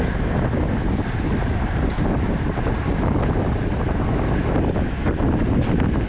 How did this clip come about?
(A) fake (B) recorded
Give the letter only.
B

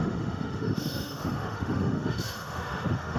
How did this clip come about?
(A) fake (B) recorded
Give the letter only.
A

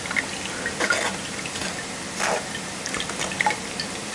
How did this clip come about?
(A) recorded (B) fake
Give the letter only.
A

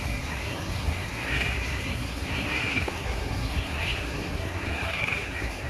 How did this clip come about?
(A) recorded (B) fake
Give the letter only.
B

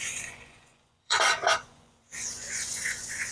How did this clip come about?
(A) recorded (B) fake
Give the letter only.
B